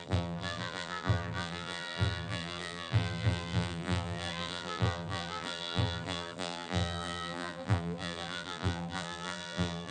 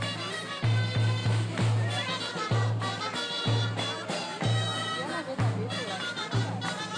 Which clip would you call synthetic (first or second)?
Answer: first